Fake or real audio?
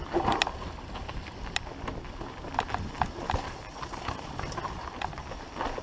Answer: real